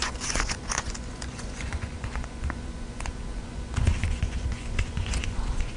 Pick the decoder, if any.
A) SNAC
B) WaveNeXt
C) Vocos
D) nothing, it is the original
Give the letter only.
C